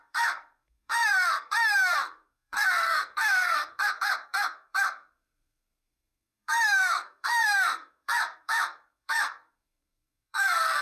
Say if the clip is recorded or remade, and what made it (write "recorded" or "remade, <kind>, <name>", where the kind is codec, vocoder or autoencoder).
remade, codec, SNAC